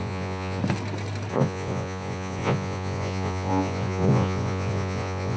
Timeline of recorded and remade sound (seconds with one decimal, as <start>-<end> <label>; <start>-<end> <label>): 0.0-0.6 remade; 0.6-1.3 recorded; 1.3-5.4 remade